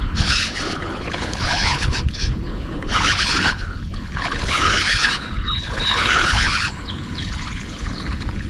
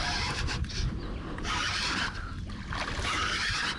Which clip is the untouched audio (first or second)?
second